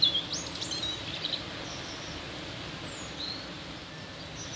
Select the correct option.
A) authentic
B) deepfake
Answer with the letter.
A